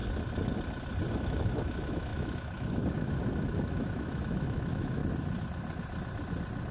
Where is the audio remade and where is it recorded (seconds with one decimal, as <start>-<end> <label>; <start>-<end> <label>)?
0.0-1.1 recorded; 1.1-5.0 remade; 5.0-6.7 recorded

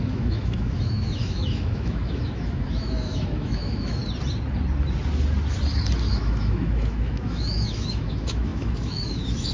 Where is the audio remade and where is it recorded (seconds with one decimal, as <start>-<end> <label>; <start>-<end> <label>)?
0.0-4.0 remade; 4.0-6.1 recorded; 6.1-9.5 remade

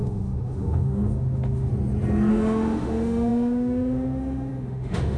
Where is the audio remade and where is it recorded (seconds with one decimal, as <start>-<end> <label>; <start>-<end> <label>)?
0.0-1.7 remade; 1.7-2.3 recorded; 2.3-5.2 remade

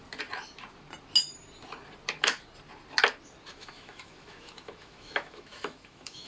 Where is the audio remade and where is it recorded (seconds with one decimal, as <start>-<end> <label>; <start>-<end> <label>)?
0.0-3.5 recorded; 3.5-6.3 remade

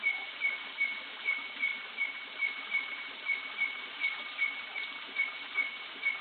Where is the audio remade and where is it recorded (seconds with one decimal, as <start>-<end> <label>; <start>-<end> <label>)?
0.0-6.2 recorded

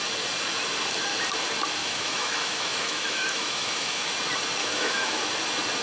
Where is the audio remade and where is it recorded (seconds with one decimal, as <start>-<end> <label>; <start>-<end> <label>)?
0.0-1.8 recorded; 1.8-4.1 remade; 4.1-4.6 recorded; 4.6-5.2 remade; 5.2-5.8 recorded